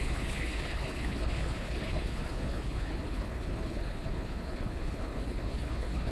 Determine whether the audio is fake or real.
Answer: fake